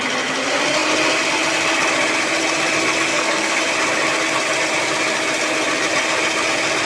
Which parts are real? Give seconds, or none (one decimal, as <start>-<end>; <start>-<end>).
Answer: 0.0-3.1; 3.6-6.8